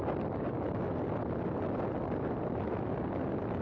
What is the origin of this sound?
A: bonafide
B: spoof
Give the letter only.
A